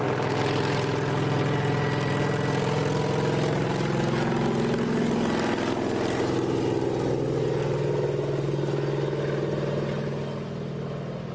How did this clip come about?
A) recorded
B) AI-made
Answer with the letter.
A